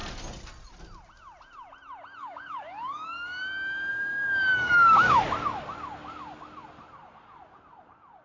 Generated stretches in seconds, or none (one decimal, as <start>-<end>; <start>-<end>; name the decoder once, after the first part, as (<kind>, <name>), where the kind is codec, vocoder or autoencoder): 2.2-3.4 (codec, DAC); 3.9-5.2